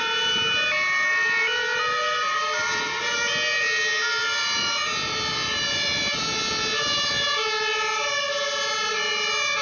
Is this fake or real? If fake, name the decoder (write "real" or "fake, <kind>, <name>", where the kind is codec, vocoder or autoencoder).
real